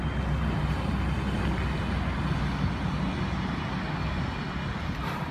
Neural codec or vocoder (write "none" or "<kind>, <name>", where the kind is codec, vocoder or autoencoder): none